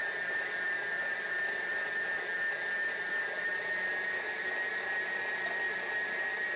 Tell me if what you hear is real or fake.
real